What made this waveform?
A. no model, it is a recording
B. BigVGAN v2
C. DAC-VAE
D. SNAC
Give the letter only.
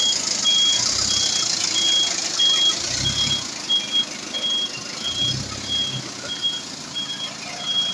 A